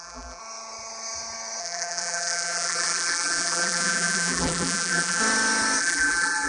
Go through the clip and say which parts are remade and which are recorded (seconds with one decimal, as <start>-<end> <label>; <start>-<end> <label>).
0.0-0.4 remade; 0.4-1.6 recorded; 1.6-5.2 remade; 5.2-5.8 recorded; 5.8-6.5 remade

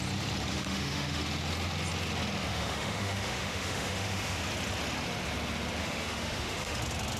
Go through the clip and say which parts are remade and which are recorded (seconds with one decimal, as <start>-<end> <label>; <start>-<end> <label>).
0.0-0.5 recorded; 0.5-1.2 remade; 1.2-2.5 recorded; 2.5-4.4 remade; 4.4-5.8 recorded; 5.8-6.8 remade; 6.8-7.2 recorded

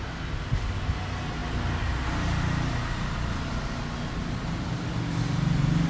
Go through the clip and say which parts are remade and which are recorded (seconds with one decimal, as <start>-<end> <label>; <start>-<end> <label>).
0.0-5.9 recorded

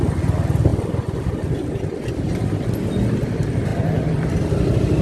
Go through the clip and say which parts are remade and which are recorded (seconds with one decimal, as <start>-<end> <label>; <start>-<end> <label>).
0.0-0.7 recorded; 0.7-2.7 remade; 2.7-5.0 recorded

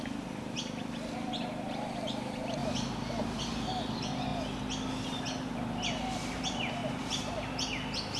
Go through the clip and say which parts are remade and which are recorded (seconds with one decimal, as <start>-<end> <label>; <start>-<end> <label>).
0.0-8.2 recorded

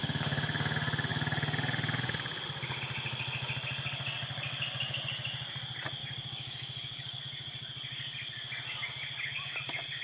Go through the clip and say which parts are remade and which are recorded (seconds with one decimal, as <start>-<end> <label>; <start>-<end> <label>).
0.0-6.0 recorded; 6.0-7.2 remade; 7.2-10.0 recorded